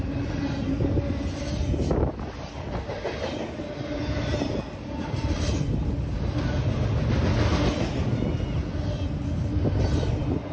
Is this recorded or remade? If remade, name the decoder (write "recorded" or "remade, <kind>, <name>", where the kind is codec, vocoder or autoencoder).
recorded